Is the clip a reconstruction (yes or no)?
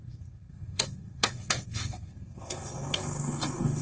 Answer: yes